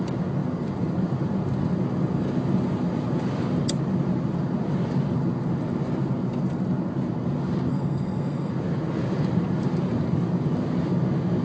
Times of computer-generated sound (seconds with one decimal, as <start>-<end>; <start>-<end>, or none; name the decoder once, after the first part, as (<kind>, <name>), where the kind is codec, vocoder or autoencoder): 7.7-8.5 (codec, SNAC)